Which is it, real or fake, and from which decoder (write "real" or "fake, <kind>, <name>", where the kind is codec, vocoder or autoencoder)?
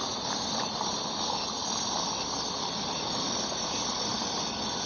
real